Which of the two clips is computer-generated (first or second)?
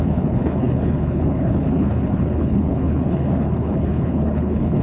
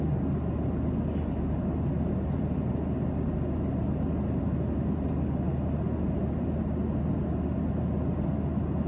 first